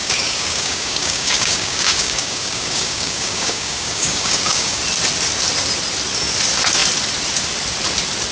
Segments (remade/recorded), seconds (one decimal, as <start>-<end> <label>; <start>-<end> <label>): 0.0-4.8 remade; 4.8-8.3 recorded